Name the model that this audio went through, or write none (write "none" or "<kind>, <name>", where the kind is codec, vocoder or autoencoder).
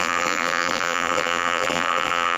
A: vocoder, BigVGAN v2